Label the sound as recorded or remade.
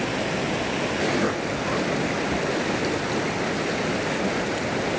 recorded